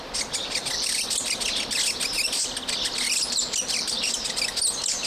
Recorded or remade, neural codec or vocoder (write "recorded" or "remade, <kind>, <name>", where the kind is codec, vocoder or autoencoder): recorded